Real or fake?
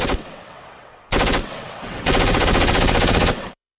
fake